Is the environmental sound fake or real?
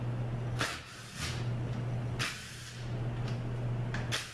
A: real